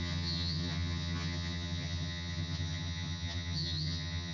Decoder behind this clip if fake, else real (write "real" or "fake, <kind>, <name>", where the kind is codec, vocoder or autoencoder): fake, vocoder, HiFi-GAN